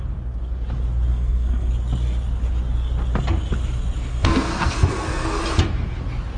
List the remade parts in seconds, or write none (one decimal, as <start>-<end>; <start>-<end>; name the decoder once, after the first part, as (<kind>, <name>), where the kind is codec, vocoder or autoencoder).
1.1-1.7 (codec, SNAC); 4.1-5.4

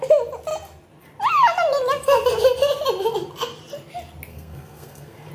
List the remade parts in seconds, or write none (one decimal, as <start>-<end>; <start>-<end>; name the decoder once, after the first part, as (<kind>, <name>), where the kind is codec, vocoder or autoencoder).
4.3-5.3 (codec, SNAC)

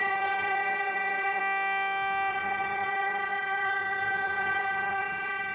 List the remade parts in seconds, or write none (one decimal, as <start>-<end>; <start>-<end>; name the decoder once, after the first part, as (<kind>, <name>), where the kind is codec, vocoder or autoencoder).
0.0-1.4 (vocoder, HiFi-GAN); 2.3-5.5